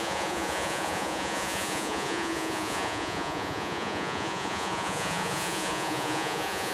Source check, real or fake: fake